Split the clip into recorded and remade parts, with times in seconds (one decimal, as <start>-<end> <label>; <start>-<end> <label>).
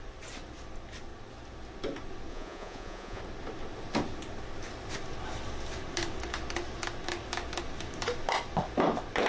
0.0-2.3 recorded; 2.3-3.2 remade; 3.2-9.3 recorded